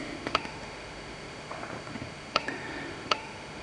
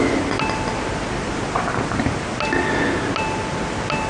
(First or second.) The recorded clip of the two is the second